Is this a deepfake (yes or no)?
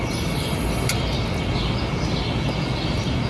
no